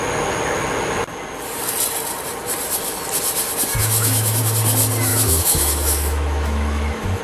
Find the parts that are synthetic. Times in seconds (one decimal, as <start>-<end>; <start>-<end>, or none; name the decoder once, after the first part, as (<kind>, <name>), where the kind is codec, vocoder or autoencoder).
3.8-4.4 (autoencoder, DAC-VAE); 5.1-7.2